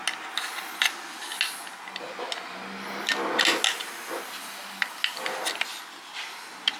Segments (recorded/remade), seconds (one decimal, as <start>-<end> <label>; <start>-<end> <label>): 0.0-6.8 recorded